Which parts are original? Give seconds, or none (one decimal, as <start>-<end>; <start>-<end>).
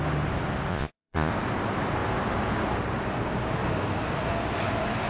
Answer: 0.0-0.7; 1.3-5.1